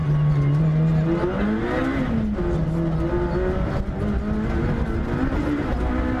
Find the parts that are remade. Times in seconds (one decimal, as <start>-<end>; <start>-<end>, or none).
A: none